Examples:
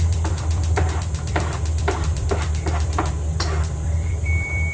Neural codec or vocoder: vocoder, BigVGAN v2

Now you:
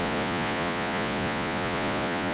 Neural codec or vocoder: vocoder, Vocos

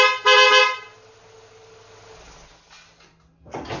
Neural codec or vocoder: none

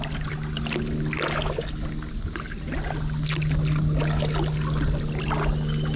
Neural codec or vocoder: none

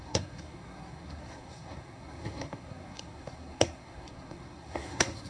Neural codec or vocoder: codec, SNAC